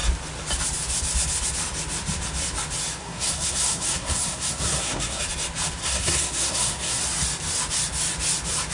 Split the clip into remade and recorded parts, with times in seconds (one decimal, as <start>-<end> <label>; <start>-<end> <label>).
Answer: 0.0-3.0 recorded; 3.0-5.2 remade; 5.2-5.8 recorded; 5.8-7.0 remade; 7.0-8.7 recorded